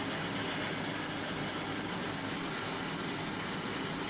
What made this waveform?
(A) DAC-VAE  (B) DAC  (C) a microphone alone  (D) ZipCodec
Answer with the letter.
C